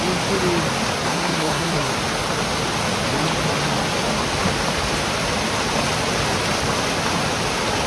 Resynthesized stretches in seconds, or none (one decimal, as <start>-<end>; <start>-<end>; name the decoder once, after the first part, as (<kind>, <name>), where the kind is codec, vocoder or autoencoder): 1.1-1.9 (codec, SNAC)